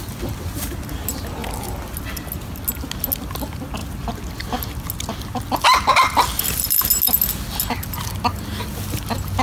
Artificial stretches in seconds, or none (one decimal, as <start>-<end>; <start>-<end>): none